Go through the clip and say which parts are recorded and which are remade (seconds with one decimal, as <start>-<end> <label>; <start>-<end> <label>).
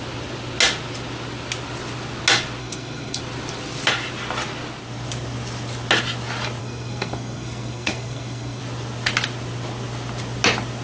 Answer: 0.0-2.6 recorded; 2.6-3.2 remade; 3.2-6.6 recorded; 6.6-8.6 remade; 8.6-10.8 recorded